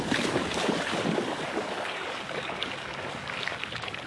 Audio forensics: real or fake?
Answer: fake